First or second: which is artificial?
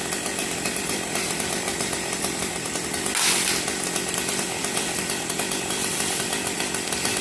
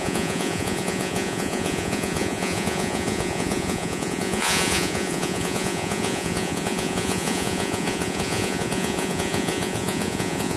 second